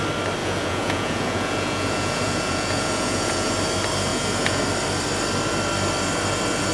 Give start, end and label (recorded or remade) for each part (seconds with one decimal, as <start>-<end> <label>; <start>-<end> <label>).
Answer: 0.0-0.4 recorded; 0.4-3.5 remade; 3.5-4.1 recorded; 4.1-4.6 remade; 4.6-6.7 recorded